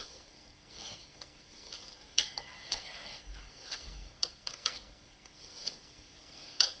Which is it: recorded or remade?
remade